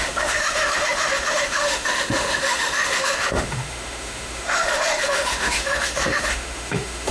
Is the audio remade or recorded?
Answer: remade